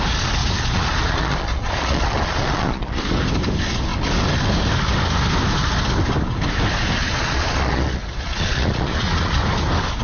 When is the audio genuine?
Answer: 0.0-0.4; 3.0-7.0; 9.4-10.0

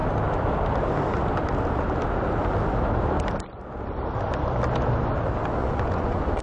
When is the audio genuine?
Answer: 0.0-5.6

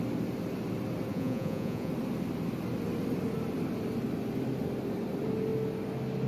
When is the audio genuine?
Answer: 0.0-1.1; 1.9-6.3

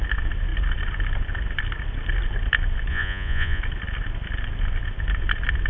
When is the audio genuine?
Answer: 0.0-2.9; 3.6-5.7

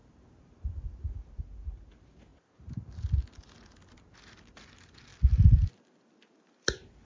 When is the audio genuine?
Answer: 0.0-7.1

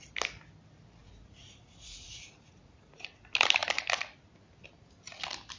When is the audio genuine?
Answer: 0.0-1.0; 3.2-5.6

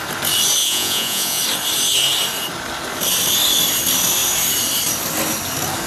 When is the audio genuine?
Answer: 0.0-0.6; 1.4-5.9

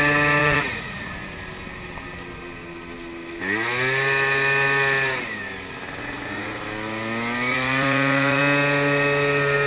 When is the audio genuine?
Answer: 0.0-0.4; 1.1-6.0; 6.6-7.5; 8.4-9.7